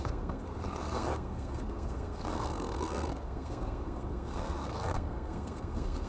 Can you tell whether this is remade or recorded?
remade